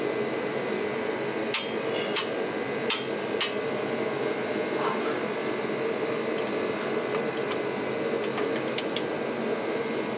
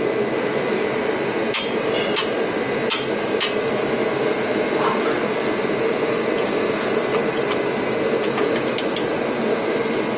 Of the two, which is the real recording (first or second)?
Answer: first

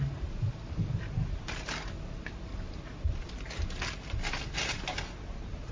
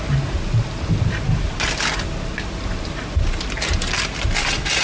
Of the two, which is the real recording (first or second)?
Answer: second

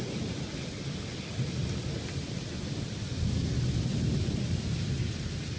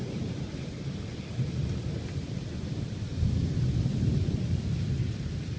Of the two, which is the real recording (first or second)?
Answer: first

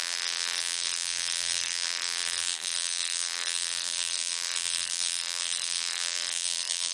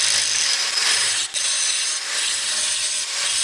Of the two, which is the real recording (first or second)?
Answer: second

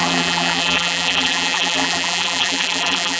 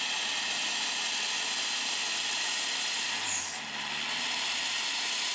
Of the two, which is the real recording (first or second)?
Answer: second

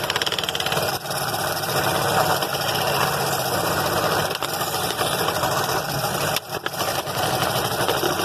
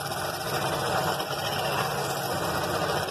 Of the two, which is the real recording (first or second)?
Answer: second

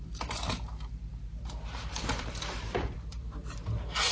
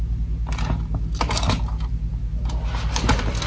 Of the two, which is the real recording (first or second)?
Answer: second